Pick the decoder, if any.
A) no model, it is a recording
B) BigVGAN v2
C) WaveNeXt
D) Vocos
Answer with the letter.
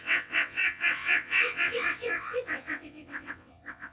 C